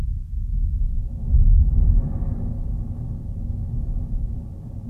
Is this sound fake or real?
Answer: real